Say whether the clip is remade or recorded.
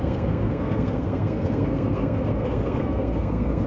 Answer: remade